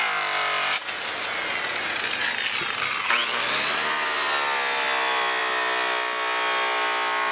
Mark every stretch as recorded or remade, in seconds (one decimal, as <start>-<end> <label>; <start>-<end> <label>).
0.0-7.3 recorded